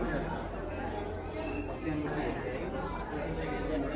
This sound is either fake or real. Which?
real